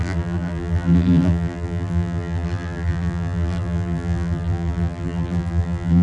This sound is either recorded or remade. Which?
remade